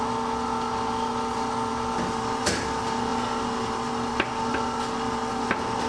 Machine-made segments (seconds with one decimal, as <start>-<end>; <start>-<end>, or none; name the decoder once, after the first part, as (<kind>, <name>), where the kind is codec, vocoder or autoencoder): none